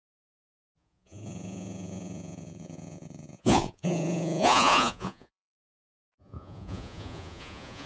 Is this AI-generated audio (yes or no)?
yes